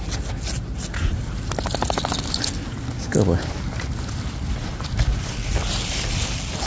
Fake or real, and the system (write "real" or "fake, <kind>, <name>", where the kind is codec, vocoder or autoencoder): real